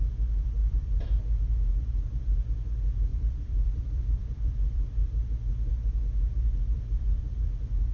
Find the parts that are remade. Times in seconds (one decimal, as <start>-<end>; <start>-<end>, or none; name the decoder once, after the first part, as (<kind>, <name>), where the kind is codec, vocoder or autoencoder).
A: 0.6-1.2 (vocoder, BigVGAN v2); 3.1-5.1; 6.7-7.2